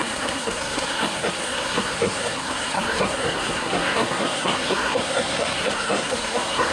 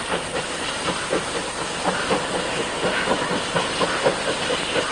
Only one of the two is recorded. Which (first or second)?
second